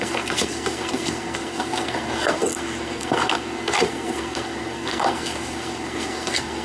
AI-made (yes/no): yes